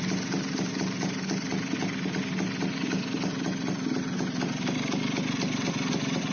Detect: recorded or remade recorded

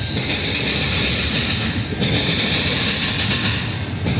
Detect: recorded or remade recorded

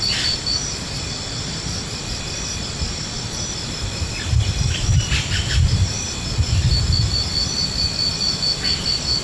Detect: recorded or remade recorded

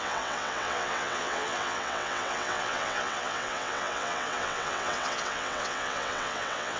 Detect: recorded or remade remade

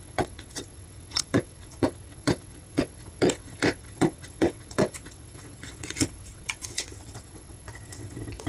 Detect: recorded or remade remade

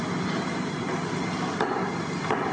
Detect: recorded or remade recorded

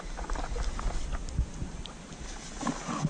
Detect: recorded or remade recorded